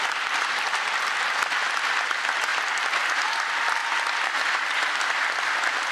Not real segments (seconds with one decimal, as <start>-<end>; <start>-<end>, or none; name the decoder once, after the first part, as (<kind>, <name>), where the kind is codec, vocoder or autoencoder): none